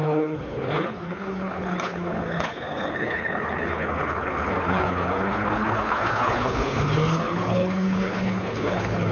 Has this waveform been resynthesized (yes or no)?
yes